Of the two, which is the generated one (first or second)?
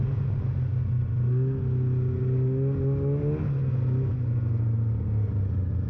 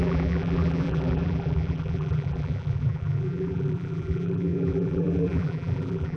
second